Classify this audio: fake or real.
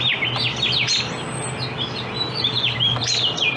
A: real